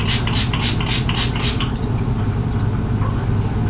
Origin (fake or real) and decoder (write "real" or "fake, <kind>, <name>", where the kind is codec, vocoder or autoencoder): real